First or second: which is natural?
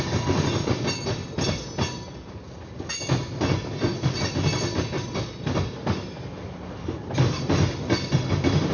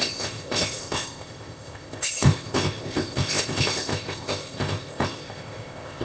first